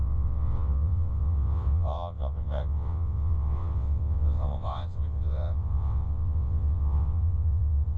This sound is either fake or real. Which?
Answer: fake